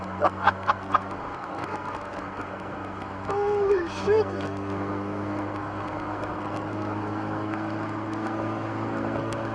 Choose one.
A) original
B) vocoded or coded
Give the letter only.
B